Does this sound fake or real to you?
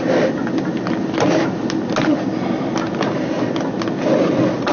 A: real